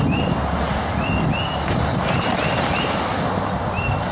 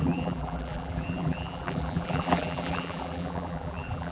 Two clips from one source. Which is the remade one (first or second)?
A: second